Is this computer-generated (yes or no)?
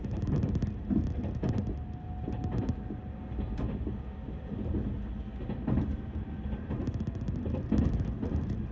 no